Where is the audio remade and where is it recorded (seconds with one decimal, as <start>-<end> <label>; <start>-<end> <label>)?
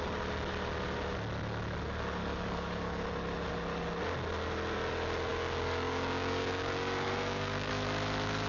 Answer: 0.0-2.2 recorded; 2.2-3.0 remade; 3.0-5.3 recorded; 5.3-7.7 remade; 7.7-8.5 recorded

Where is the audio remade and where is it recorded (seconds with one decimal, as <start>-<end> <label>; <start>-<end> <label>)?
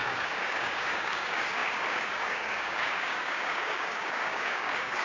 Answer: 0.0-5.0 remade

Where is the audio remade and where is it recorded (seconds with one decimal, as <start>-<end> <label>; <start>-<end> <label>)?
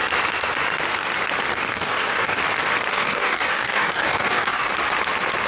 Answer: 0.0-1.5 recorded; 1.5-2.4 remade; 2.4-2.9 recorded; 2.9-4.7 remade; 4.7-5.5 recorded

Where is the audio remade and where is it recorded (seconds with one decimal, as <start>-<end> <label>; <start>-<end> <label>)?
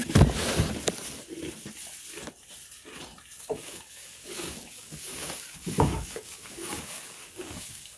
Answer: 0.0-3.4 recorded; 3.4-8.0 remade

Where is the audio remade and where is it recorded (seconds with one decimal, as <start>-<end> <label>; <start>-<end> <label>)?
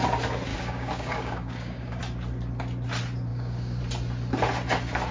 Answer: 0.0-0.5 recorded; 0.5-2.0 remade; 2.0-3.3 recorded; 3.3-3.8 remade; 3.8-5.1 recorded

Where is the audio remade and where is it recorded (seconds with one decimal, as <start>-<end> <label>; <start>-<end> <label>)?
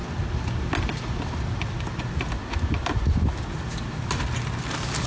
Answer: 0.0-5.1 recorded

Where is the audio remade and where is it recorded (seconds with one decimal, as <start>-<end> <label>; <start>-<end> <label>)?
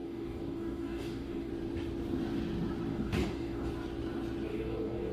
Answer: 0.0-1.5 remade; 1.5-2.9 recorded; 2.9-3.7 remade; 3.7-4.5 recorded; 4.5-5.1 remade